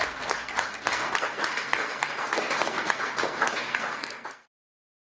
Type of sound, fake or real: fake